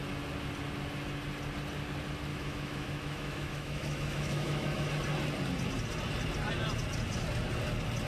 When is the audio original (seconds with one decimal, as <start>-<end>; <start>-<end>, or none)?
0.0-2.3; 4.9-8.1